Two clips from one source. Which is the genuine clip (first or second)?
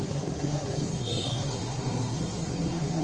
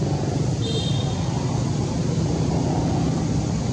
second